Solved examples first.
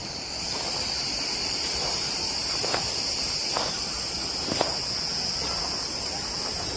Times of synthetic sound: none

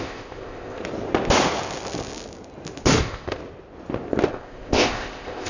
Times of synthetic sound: 0.0-0.8 (codec, ZipCodec); 3.0-3.4; 4.3-5.5